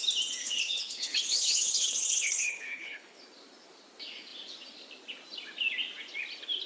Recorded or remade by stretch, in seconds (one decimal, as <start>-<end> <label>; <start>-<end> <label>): 0.0-0.4 recorded; 0.4-3.2 remade; 3.2-6.7 recorded